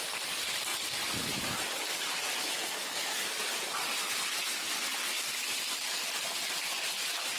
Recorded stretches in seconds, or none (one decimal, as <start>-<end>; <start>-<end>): 0.0-2.2; 3.2-7.4